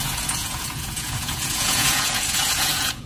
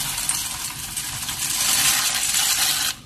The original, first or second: second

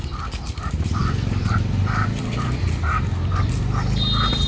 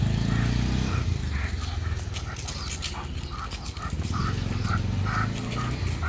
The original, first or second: second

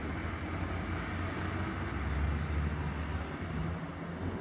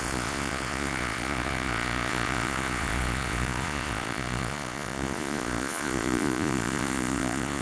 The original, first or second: first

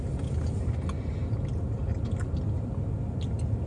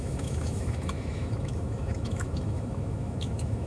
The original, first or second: first